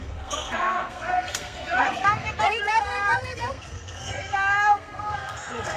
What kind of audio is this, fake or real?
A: fake